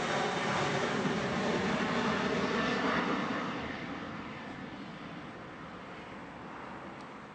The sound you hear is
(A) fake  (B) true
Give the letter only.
B